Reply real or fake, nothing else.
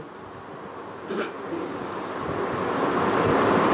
real